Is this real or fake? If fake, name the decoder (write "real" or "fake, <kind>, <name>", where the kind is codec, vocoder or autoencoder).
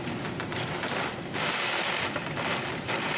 real